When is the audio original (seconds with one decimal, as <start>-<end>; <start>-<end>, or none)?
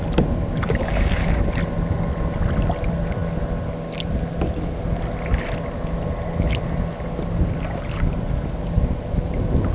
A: 0.0-0.8; 1.4-9.7